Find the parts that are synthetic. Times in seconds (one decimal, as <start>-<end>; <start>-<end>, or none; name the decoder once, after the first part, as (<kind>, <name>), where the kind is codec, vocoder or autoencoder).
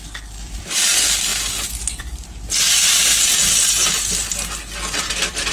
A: 0.0-1.3 (vocoder, BigVGAN v2); 2.0-3.3; 5.0-5.5